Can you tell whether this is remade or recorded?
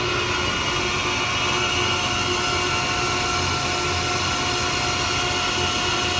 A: recorded